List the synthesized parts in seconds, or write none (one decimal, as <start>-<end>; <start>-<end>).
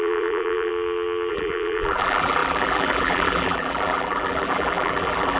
0.0-0.7; 1.3-5.4